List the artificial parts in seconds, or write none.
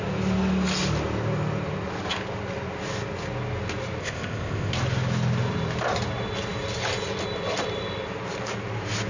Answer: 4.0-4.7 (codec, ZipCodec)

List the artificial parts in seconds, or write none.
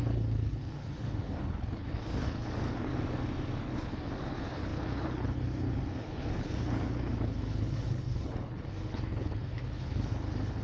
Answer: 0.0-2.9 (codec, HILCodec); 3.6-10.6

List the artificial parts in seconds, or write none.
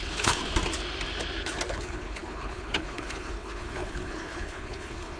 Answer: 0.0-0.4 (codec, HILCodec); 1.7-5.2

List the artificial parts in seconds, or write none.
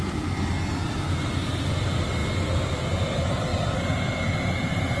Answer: none